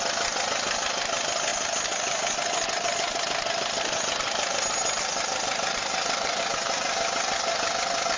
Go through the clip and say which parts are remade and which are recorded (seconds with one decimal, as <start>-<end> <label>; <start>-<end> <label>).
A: 0.0-8.2 recorded